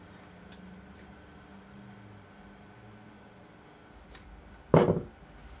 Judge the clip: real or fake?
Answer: real